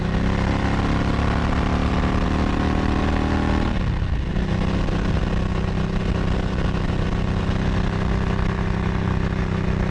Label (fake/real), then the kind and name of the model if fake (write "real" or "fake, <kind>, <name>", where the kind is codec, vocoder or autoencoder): real